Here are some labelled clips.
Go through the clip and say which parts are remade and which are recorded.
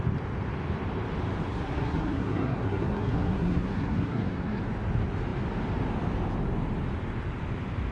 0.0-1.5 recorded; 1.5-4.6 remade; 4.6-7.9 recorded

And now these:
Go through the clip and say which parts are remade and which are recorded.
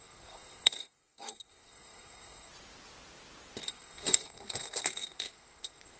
0.0-2.5 remade; 2.5-3.7 recorded; 3.7-6.0 remade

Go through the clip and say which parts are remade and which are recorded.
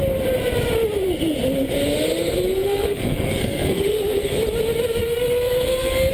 0.0-2.5 recorded; 2.5-4.4 remade; 4.4-5.0 recorded; 5.0-6.1 remade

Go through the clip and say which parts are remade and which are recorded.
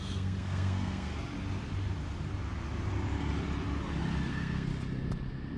0.0-1.1 remade; 1.1-4.3 recorded; 4.3-4.7 remade; 4.7-5.6 recorded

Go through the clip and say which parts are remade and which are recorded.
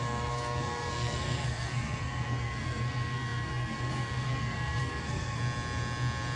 0.0-5.4 remade; 5.4-6.4 recorded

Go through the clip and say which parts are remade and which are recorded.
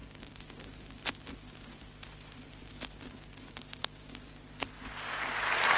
0.0-5.8 recorded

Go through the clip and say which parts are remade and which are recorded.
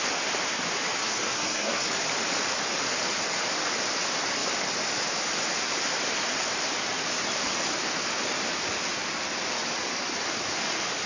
0.0-1.0 recorded; 1.0-1.9 remade; 1.9-11.1 recorded